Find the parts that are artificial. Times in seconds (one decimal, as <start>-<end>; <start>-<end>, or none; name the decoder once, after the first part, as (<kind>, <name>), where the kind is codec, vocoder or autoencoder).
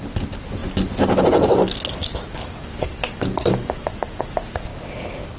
1.6-4.3 (codec, DAC)